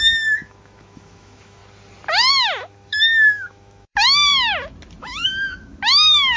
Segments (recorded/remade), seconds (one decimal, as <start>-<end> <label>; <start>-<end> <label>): 0.0-1.6 remade; 1.6-2.3 recorded; 2.3-4.3 remade; 4.3-5.0 recorded; 5.0-6.4 remade